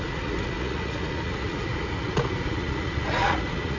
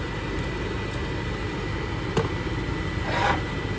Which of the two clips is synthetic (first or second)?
first